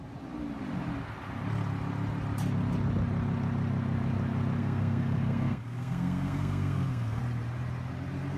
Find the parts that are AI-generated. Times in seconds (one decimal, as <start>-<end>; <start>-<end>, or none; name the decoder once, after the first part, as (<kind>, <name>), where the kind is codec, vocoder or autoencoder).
4.6-7.2 (codec, SNAC)